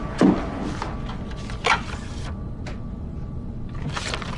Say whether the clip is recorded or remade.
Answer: recorded